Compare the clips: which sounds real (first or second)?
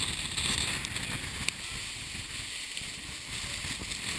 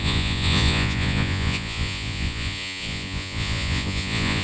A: first